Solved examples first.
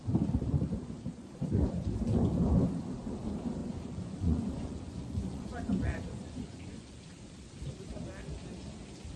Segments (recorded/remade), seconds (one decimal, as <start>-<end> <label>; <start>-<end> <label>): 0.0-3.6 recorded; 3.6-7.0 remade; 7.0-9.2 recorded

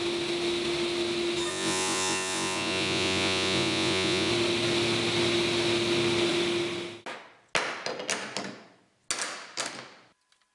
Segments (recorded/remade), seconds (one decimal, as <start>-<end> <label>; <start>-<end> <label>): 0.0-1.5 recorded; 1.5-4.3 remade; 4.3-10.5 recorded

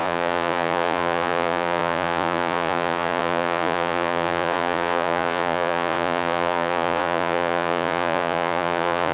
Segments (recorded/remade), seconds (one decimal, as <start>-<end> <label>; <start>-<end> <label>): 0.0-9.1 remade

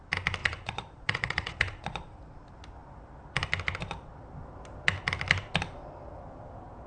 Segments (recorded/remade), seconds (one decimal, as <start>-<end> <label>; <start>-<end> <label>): 0.0-0.4 recorded; 0.4-2.2 remade; 2.2-6.9 recorded